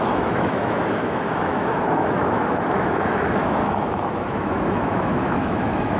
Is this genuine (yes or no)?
no